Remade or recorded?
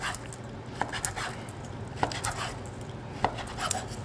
recorded